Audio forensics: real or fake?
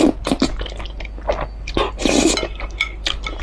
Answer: real